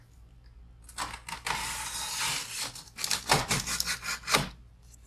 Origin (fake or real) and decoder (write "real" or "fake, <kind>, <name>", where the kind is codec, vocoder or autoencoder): real